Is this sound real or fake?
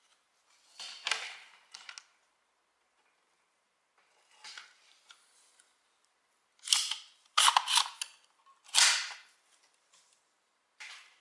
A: real